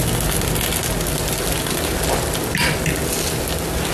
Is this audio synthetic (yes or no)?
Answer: no